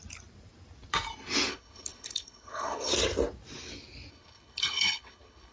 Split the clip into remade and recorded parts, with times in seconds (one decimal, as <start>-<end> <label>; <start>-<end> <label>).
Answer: 0.0-1.5 recorded; 1.5-2.9 remade; 2.9-4.1 recorded; 4.1-5.5 remade